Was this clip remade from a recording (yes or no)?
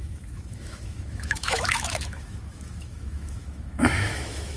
yes